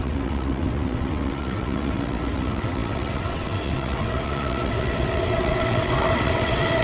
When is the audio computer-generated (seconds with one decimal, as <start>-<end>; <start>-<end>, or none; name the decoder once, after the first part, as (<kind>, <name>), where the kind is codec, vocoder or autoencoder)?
0.0-6.8 (vocoder, WaveNeXt)